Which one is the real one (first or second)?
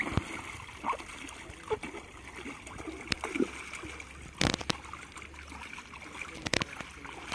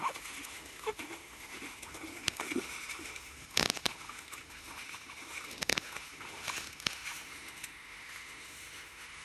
first